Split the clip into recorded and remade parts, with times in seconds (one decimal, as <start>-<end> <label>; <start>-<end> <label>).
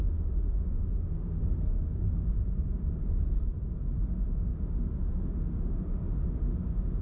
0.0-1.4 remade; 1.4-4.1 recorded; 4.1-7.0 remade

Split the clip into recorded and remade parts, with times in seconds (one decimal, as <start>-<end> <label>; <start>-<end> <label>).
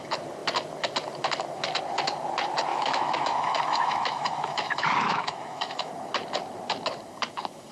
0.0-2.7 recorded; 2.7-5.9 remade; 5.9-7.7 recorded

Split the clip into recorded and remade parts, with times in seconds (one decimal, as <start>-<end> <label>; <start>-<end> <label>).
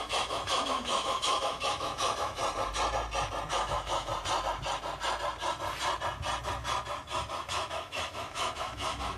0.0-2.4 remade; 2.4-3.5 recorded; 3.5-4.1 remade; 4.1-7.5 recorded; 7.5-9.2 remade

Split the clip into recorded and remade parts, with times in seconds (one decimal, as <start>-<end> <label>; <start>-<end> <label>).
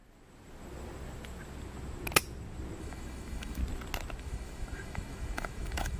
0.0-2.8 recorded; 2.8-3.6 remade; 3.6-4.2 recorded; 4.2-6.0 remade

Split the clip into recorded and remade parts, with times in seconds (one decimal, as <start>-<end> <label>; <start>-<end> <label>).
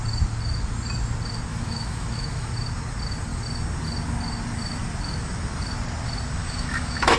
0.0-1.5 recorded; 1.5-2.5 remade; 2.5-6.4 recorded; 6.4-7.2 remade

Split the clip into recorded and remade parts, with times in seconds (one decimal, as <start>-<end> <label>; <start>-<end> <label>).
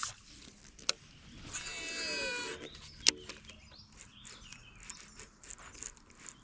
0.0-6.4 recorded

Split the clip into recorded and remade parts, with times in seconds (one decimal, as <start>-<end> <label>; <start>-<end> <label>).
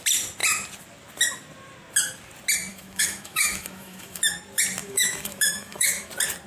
0.0-2.7 recorded; 2.7-4.2 remade; 4.2-4.8 recorded; 4.8-6.1 remade; 6.1-6.5 recorded